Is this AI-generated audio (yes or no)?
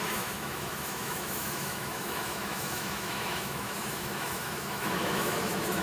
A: yes